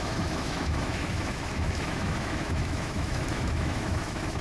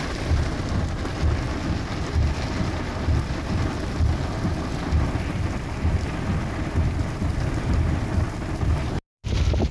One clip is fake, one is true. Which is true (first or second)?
second